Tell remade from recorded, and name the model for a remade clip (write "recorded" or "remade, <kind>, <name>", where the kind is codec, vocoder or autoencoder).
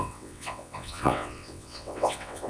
remade, vocoder, WaveNeXt